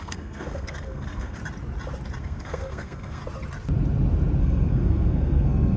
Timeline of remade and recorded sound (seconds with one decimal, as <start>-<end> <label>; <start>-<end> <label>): 0.0-1.4 remade; 1.4-2.2 recorded; 2.2-3.2 remade; 3.2-4.4 recorded; 4.4-5.8 remade